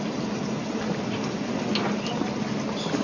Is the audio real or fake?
real